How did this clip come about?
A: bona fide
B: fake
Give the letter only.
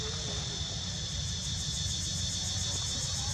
A